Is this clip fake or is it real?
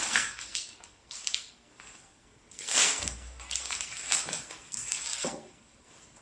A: fake